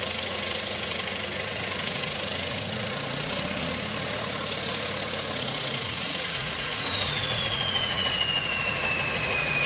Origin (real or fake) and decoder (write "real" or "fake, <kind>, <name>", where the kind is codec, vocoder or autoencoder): fake, vocoder, Vocos